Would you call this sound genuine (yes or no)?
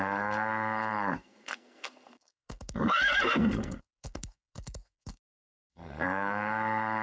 no